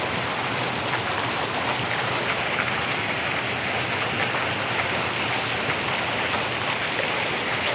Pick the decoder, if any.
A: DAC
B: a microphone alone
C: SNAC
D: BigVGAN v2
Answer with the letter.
B